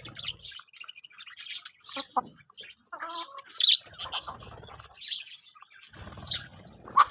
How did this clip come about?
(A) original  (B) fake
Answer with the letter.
A